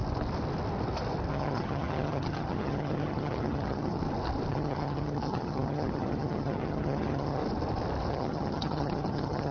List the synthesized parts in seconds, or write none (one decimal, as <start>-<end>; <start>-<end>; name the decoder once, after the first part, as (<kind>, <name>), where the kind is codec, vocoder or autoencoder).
1.3-4.0 (vocoder, HiFi-GAN); 4.5-7.4; 8.1-9.5